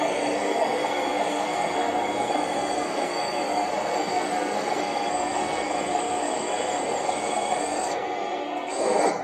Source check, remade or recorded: remade